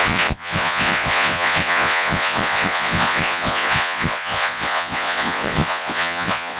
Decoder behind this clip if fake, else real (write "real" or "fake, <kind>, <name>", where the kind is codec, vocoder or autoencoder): fake, vocoder, Vocos